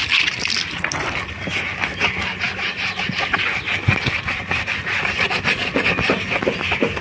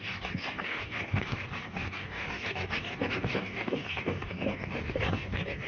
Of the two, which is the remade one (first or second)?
second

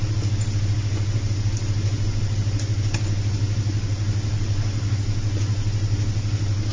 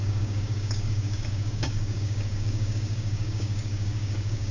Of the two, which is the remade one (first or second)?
second